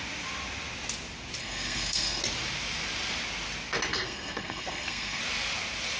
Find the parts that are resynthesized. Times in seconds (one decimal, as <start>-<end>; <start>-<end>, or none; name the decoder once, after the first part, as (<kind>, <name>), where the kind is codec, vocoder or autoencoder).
1.4-2.2 (codec, SNAC); 3.9-5.2